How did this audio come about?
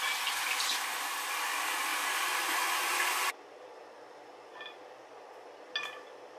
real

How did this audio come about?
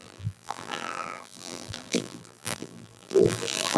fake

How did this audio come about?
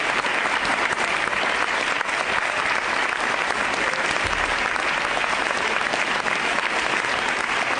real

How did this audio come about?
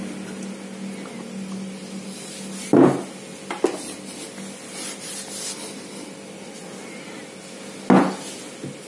real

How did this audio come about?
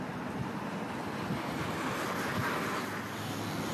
real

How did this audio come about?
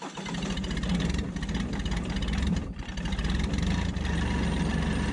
real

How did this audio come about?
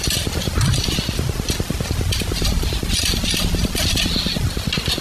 real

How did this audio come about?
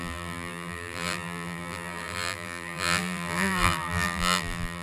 fake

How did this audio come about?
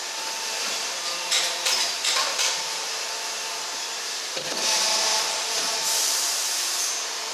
fake